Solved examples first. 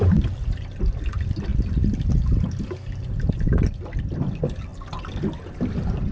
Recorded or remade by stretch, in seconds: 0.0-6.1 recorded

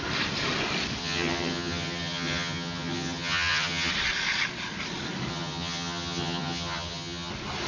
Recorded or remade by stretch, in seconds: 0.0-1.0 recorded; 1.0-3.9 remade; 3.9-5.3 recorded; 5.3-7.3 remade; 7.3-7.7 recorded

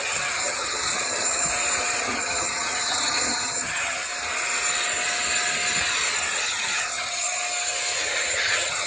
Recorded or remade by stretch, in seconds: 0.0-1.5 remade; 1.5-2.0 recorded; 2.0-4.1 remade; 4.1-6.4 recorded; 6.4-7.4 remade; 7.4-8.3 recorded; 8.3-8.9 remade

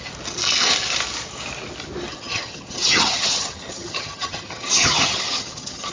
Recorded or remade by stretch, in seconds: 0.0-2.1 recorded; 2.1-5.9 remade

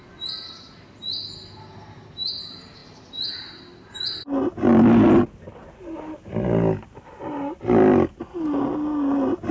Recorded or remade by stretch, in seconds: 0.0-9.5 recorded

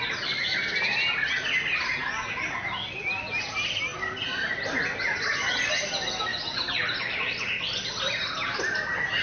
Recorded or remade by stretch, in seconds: 0.0-9.2 recorded